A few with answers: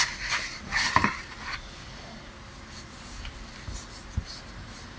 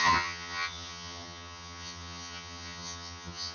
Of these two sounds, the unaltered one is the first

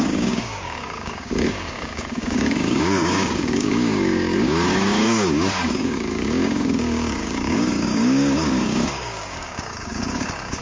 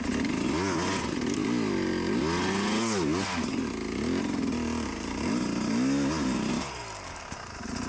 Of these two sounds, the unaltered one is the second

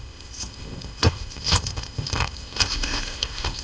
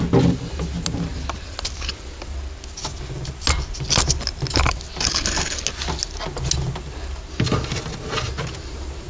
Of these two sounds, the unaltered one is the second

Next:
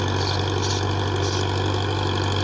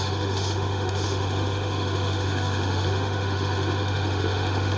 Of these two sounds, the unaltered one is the first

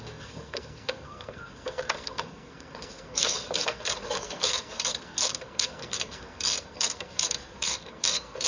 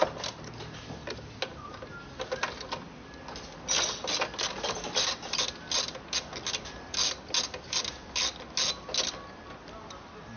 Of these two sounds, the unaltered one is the second